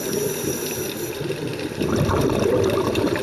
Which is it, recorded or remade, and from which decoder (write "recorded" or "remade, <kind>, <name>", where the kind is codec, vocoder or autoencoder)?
remade, vocoder, BigVGAN v2